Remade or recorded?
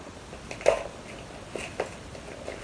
recorded